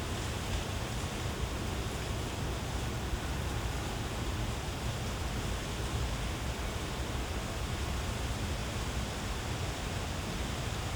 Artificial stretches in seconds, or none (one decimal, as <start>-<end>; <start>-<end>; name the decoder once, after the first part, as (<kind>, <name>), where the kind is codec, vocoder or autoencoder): none